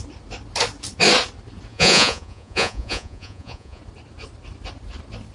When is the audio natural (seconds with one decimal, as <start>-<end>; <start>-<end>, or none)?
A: 0.0-1.7; 3.8-5.3